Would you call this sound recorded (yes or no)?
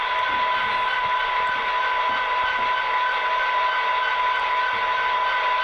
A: yes